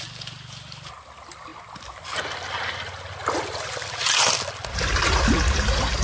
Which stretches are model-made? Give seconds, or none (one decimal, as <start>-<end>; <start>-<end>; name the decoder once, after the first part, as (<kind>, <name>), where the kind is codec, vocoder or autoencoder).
none